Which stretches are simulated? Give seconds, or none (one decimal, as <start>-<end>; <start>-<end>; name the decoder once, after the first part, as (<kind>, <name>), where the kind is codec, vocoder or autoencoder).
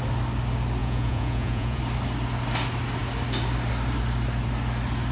0.8-1.8 (vocoder, Vocos)